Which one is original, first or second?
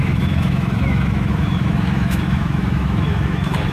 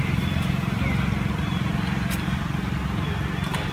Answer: second